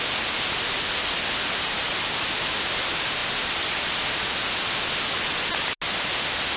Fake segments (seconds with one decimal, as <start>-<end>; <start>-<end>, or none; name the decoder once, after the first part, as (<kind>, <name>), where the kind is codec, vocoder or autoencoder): none

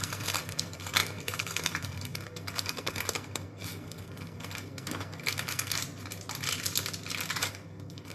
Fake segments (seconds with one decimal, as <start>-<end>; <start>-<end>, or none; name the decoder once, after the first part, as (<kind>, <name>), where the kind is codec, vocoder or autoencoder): 0.0-5.8 (codec, SNAC); 7.5-8.1